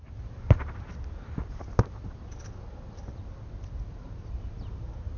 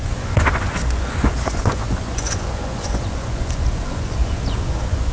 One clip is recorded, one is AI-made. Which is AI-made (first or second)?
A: second